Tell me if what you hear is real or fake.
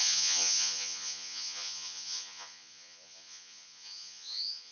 fake